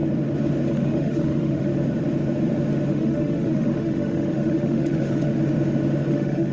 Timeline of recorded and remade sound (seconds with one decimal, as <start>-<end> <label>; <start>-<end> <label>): 0.0-0.7 recorded; 0.7-1.7 remade; 1.7-2.9 recorded; 2.9-5.4 remade; 5.4-6.1 recorded; 6.1-6.5 remade